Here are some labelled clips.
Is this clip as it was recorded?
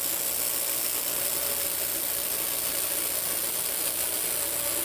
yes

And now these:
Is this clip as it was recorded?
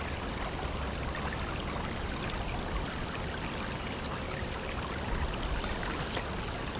yes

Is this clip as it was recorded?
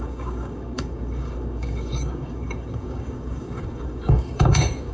no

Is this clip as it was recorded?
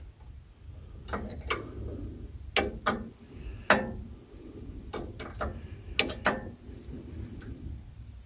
yes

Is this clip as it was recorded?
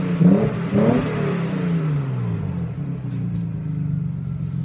yes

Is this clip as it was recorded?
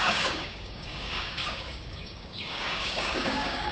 no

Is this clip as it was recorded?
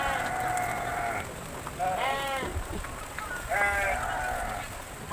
yes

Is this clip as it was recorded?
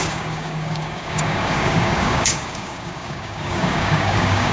no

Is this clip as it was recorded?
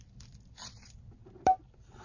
yes